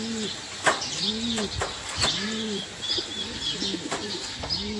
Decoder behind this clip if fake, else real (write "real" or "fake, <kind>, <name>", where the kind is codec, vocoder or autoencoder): real